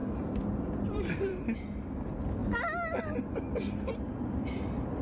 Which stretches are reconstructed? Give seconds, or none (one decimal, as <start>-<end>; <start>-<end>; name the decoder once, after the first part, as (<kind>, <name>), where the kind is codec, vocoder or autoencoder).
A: 0.0-1.4 (vocoder, BigVGAN v2)